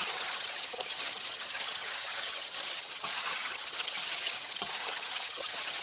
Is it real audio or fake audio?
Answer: fake